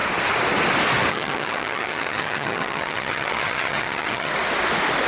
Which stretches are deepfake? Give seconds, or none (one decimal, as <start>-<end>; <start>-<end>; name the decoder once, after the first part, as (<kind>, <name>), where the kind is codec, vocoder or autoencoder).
1.1-4.3 (vocoder, HiFi-GAN)